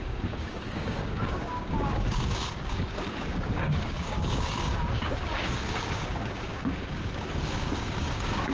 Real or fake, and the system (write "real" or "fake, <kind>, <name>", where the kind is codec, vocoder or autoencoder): fake, codec, DAC